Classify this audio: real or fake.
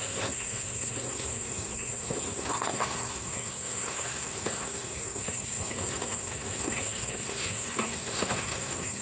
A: fake